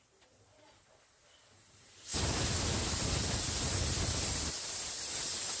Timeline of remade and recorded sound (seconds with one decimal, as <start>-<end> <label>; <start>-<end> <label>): 0.0-5.6 recorded